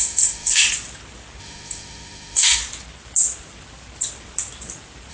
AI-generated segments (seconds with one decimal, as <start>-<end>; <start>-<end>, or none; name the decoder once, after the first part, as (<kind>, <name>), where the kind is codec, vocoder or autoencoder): 0.0-0.6 (autoencoder, DAC-VAE); 1.4-2.6